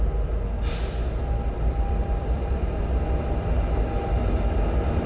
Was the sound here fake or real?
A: real